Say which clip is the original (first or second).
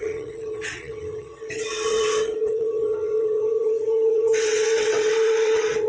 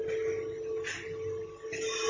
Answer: second